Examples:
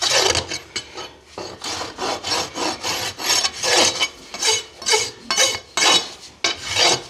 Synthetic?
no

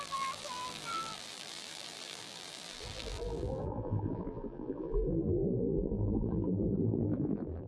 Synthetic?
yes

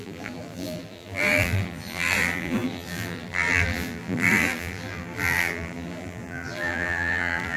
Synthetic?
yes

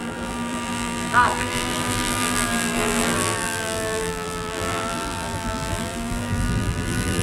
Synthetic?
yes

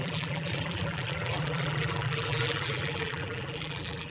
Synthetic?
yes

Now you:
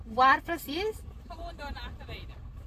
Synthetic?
no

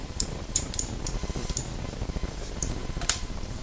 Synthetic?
yes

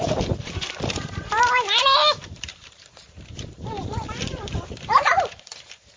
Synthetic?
yes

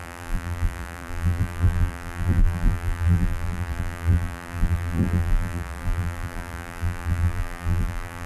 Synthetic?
yes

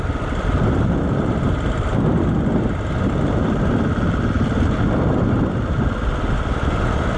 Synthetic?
no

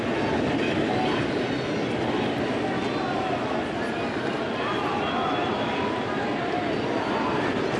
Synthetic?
no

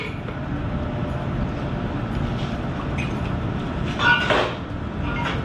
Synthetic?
no